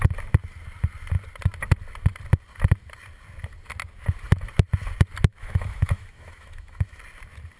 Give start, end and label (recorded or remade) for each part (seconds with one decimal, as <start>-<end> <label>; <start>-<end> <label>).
0.0-5.3 recorded; 5.3-7.0 remade; 7.0-7.6 recorded